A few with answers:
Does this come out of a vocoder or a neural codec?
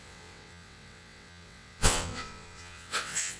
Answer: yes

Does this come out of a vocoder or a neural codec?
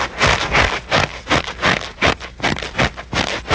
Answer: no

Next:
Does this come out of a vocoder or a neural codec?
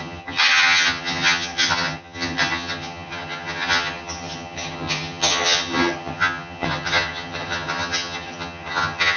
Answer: yes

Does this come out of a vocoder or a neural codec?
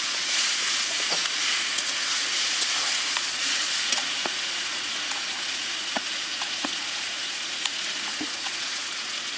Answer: yes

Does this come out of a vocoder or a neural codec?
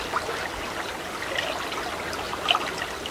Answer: no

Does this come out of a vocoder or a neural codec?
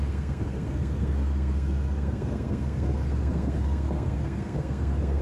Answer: yes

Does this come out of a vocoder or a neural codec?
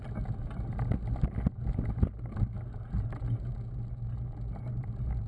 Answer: no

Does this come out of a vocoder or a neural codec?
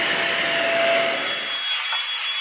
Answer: no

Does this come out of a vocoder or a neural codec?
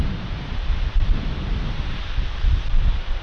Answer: no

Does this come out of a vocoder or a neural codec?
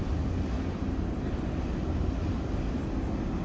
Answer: no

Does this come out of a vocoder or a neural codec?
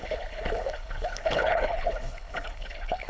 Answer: yes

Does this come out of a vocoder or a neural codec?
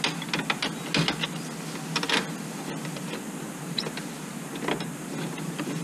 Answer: no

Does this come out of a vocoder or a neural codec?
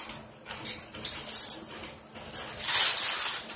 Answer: yes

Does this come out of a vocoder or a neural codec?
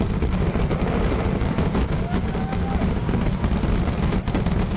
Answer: no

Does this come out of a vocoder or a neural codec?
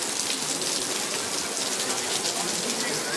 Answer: no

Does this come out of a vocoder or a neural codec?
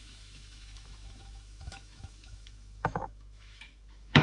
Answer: yes